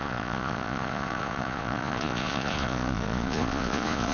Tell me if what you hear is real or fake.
fake